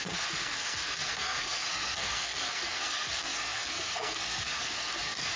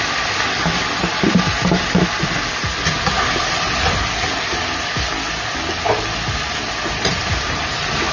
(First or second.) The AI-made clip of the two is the first